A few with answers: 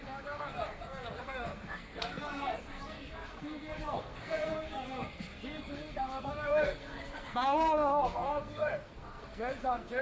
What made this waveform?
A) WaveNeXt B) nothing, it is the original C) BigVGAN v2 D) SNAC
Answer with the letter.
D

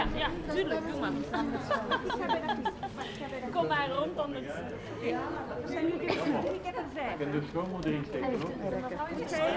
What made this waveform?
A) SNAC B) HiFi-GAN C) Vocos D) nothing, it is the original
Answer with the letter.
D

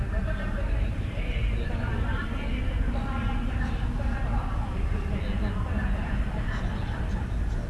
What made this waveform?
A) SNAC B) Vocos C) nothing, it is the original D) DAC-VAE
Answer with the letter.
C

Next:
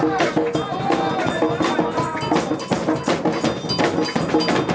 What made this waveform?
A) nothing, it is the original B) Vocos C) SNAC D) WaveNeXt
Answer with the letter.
A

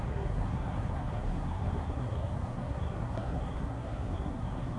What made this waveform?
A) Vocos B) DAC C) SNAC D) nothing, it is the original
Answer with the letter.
C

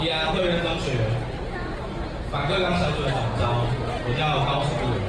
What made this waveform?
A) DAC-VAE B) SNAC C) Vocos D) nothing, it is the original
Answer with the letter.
D